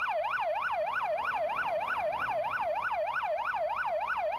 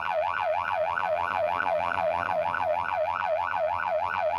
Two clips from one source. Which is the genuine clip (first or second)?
first